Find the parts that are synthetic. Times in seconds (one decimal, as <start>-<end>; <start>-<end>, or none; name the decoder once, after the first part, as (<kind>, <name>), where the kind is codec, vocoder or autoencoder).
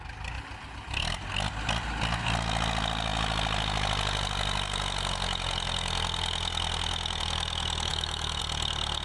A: 7.9-8.4 (autoencoder, DAC-VAE)